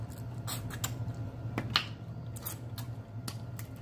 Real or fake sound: real